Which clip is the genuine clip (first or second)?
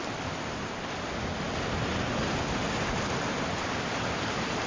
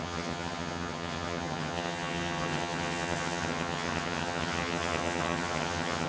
first